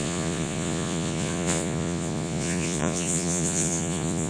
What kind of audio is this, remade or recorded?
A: remade